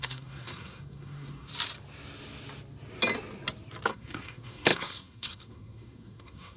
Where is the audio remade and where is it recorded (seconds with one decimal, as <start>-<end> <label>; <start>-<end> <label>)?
0.0-1.5 remade; 1.5-3.9 recorded; 3.9-6.6 remade